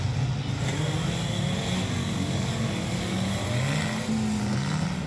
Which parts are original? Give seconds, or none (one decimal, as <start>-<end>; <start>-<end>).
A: 0.0-2.0; 3.3-5.1